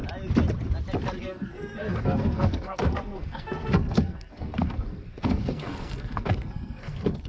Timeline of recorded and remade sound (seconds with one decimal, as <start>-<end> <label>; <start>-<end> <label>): 0.0-1.2 recorded; 1.2-7.3 remade